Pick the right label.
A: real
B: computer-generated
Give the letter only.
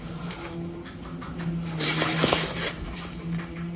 A